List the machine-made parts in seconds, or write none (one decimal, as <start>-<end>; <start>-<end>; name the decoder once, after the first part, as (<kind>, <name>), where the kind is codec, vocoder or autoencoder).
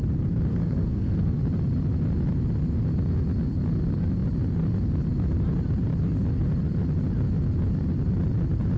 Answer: 0.5-1.4 (codec, SNAC)